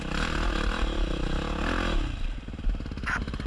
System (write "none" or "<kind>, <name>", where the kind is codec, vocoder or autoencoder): none